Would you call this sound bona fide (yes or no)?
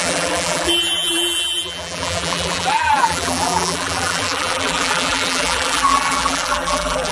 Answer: no